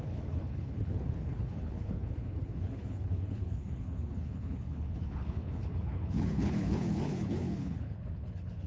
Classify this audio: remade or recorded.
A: remade